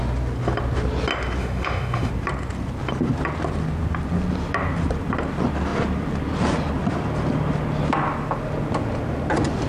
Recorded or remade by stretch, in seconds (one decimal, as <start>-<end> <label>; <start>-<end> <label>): 0.0-1.4 recorded; 1.4-2.1 remade; 2.1-9.7 recorded